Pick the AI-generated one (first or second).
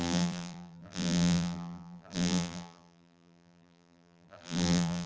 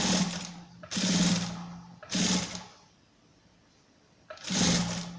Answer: first